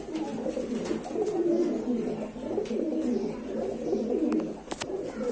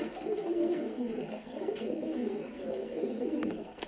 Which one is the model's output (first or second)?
second